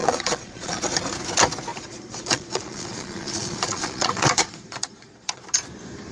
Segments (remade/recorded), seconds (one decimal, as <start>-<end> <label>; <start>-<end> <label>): 0.0-0.8 remade; 0.8-1.7 recorded; 1.7-5.4 remade; 5.4-6.1 recorded